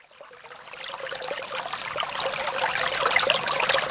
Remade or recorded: recorded